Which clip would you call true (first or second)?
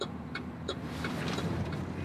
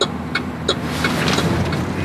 second